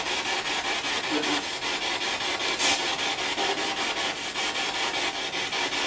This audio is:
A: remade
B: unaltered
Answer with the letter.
B